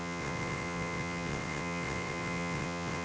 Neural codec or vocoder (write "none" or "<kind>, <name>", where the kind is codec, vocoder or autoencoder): vocoder, WaveNeXt